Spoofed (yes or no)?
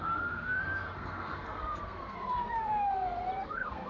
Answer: yes